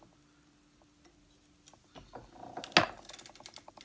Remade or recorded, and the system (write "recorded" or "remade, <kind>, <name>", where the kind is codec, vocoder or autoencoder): recorded